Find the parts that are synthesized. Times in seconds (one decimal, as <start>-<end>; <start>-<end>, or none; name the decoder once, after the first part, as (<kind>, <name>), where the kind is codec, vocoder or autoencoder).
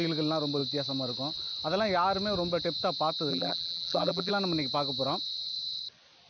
3.3-4.3 (vocoder, BigVGAN v2)